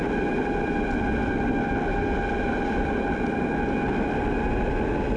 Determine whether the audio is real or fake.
real